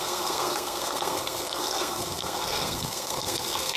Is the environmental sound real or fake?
fake